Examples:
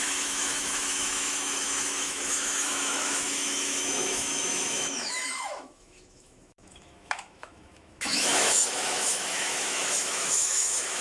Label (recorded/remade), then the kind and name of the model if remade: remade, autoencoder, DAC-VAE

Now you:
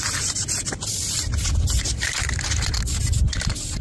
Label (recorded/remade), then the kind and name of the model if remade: recorded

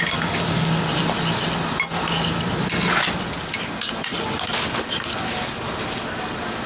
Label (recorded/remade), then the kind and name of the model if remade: recorded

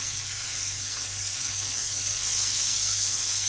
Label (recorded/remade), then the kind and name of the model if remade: remade, codec, SNAC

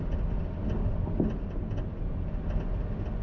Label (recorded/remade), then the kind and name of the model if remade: recorded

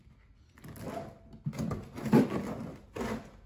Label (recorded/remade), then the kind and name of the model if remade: recorded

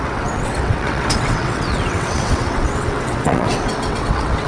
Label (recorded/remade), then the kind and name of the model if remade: remade, vocoder, WaveNeXt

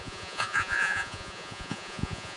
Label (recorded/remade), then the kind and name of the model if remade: remade, vocoder, Vocos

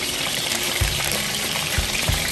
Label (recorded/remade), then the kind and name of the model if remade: remade, vocoder, BigVGAN v2